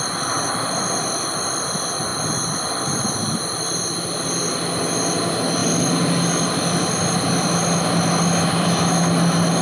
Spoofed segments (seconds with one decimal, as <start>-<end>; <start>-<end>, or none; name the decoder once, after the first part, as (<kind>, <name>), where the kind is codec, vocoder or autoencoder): none